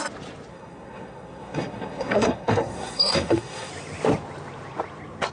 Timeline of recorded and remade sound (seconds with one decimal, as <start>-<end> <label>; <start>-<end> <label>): 0.0-0.5 recorded; 0.5-3.7 remade; 3.7-5.3 recorded